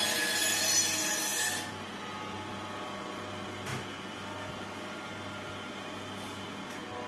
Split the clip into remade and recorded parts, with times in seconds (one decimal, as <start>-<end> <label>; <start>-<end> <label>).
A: 0.0-7.1 recorded